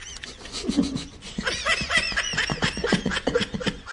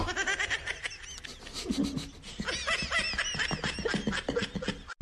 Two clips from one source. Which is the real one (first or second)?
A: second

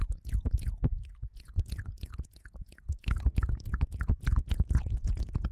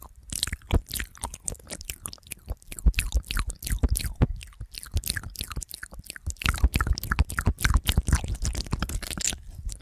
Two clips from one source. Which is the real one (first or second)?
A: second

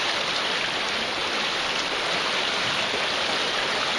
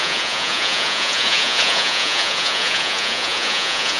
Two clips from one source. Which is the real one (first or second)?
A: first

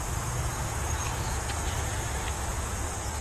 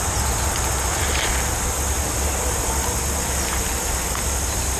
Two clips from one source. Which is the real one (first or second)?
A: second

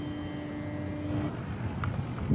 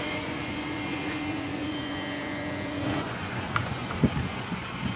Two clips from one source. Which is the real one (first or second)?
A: first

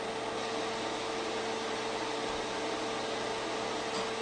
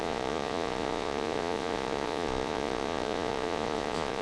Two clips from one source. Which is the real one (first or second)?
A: first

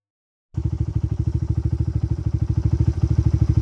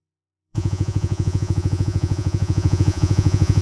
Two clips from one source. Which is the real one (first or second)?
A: first